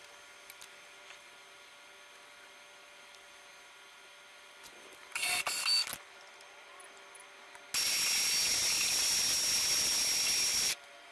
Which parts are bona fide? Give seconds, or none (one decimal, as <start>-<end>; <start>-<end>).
0.0-11.1